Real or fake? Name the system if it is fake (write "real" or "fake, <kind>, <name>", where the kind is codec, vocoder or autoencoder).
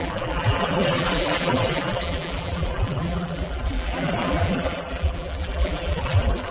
fake, vocoder, BigVGAN v2